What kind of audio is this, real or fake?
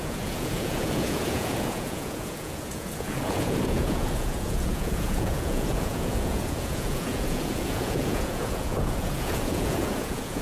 fake